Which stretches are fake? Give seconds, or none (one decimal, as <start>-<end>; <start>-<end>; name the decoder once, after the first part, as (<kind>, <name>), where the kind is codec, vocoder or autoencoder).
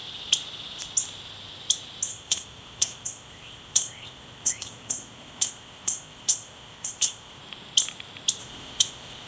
2.1-7.4 (codec, ZipCodec); 8.4-9.3